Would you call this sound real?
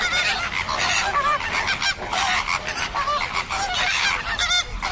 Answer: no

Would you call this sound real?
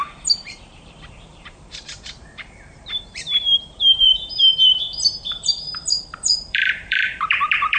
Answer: no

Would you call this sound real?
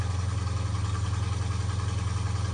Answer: yes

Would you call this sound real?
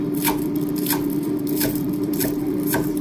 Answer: no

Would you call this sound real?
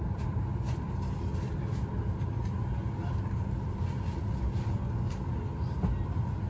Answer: yes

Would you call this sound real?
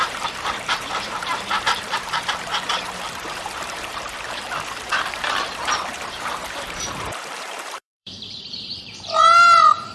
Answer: no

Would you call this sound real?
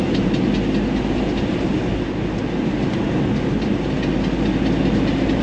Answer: yes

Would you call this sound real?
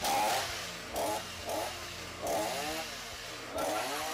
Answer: yes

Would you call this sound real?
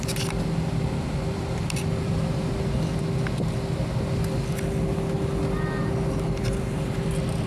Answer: yes